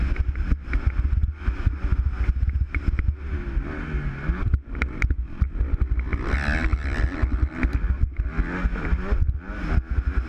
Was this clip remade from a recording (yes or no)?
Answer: no